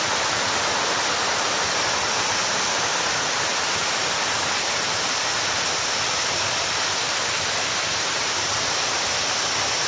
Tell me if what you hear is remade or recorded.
recorded